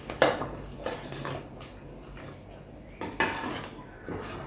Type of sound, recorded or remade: recorded